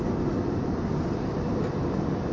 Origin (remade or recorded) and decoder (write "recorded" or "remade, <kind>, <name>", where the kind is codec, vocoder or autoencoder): recorded